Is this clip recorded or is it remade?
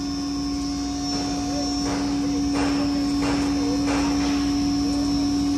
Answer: recorded